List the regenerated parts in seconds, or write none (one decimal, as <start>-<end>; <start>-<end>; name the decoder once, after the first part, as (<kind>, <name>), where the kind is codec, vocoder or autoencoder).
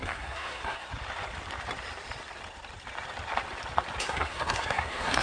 0.0-0.9 (codec, SNAC); 4.0-5.2